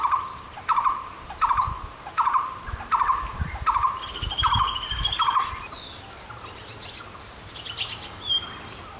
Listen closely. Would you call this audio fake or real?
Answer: real